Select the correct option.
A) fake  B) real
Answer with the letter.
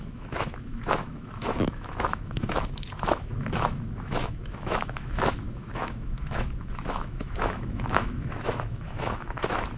A